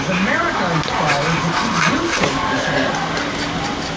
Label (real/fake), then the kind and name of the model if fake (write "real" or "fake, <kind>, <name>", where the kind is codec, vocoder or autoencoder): real